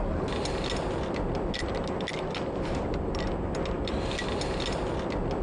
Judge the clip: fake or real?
real